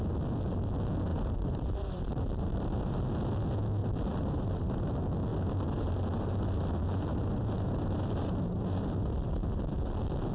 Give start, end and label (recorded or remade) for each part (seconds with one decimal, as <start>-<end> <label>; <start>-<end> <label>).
0.0-1.1 recorded; 1.1-3.0 remade; 3.0-3.8 recorded; 3.8-4.8 remade; 4.8-5.3 recorded; 5.3-9.9 remade; 9.9-10.3 recorded